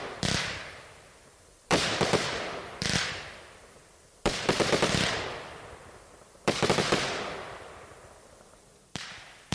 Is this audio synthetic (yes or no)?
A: yes